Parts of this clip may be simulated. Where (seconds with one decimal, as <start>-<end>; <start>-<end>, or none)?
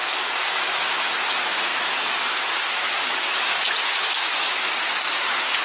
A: 0.0-5.6